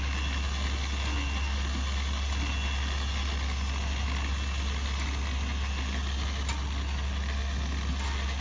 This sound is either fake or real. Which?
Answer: real